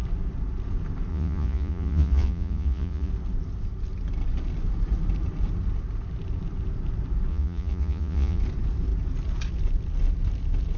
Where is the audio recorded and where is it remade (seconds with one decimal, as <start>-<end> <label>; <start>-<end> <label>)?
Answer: 0.0-1.1 recorded; 1.1-3.1 remade; 3.1-7.3 recorded; 7.3-8.4 remade; 8.4-10.8 recorded